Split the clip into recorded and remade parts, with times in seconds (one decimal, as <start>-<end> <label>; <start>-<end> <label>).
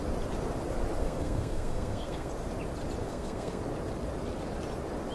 0.0-1.0 recorded; 1.0-2.3 remade; 2.3-3.0 recorded; 3.0-3.6 remade; 3.6-5.1 recorded